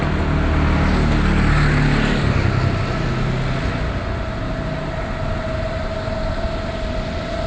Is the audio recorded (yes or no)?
yes